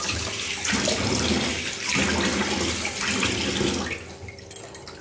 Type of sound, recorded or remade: recorded